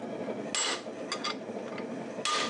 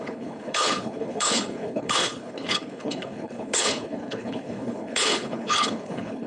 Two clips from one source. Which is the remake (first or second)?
second